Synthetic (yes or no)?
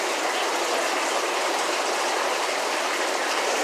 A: no